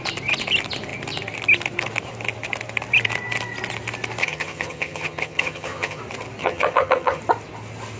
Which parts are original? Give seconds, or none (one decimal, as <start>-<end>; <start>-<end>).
0.0-4.2; 6.0-6.4; 7.2-8.0